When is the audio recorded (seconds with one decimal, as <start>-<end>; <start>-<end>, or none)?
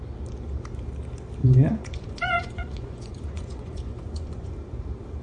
0.0-1.4; 4.5-5.2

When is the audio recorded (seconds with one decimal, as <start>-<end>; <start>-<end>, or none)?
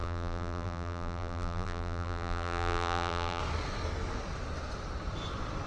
3.4-5.7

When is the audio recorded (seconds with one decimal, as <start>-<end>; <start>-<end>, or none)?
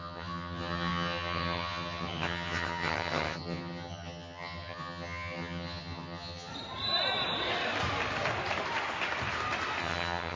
6.5-9.8